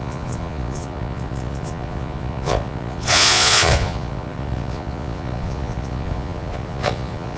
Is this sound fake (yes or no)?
yes